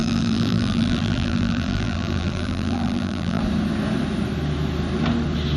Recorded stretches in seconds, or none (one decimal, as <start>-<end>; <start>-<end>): 3.4-5.6